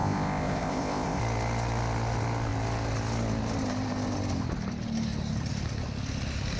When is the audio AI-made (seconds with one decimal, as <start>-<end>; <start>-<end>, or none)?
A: 0.0-1.2